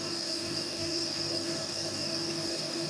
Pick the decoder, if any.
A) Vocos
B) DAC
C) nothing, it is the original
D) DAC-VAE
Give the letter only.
B